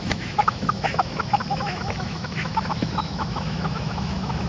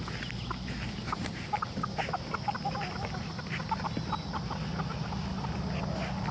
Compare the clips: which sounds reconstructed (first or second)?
first